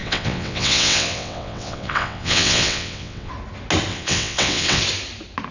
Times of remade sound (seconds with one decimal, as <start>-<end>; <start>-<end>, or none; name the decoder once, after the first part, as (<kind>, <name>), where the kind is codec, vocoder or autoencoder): 0.0-3.3 (vocoder, WaveNeXt); 3.9-4.8